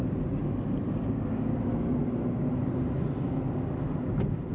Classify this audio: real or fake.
real